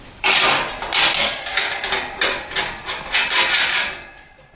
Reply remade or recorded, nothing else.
recorded